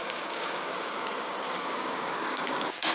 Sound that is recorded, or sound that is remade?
remade